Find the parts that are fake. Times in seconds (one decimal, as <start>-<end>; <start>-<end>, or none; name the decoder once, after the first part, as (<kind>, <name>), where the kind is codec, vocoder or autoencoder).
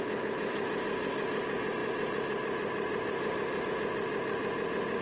1.8-3.7 (vocoder, BigVGAN v2)